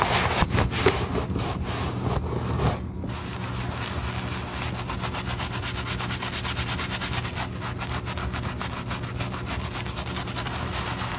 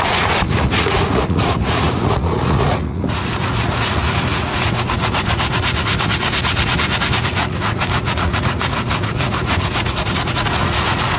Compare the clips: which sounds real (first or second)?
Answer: first